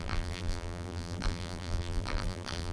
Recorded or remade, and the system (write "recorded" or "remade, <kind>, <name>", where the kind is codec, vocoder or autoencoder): remade, vocoder, BigVGAN v2